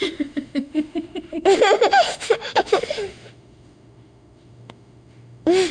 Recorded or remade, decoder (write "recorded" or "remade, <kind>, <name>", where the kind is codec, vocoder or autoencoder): remade, autoencoder, DAC-VAE